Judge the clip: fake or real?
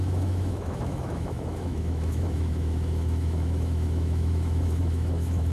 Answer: fake